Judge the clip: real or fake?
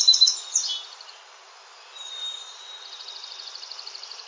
fake